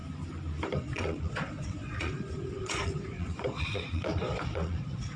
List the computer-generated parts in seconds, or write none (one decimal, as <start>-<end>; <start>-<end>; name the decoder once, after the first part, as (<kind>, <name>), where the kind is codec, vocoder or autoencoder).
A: 0.8-5.2 (vocoder, Vocos)